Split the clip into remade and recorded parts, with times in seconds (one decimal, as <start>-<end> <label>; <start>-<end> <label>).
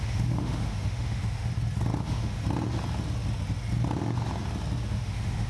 0.0-1.5 remade; 1.5-2.0 recorded; 2.0-2.4 remade; 2.4-4.9 recorded; 4.9-5.5 remade